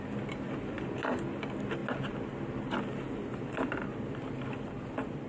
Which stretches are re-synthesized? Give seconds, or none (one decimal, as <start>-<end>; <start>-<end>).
none